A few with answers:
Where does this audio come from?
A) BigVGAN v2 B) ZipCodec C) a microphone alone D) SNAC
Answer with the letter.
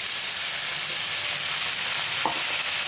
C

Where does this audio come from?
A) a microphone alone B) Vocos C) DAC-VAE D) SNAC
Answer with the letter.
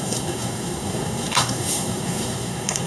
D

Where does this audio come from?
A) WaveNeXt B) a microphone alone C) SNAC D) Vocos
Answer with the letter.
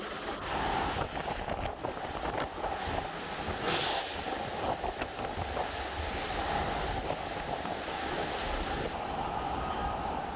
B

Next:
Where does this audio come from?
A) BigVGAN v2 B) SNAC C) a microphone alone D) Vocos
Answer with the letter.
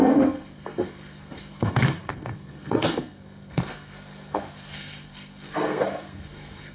B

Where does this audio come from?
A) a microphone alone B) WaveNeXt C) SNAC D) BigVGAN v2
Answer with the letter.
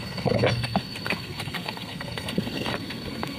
C